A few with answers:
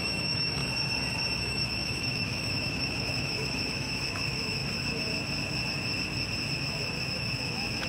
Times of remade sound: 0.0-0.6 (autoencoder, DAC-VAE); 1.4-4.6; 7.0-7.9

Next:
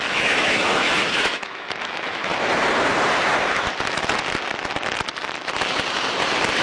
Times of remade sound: 0.0-2.3 (autoencoder, DAC-VAE)

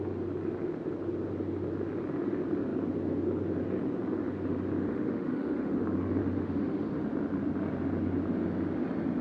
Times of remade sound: 4.9-5.8 (autoencoder, DAC-VAE); 6.2-7.0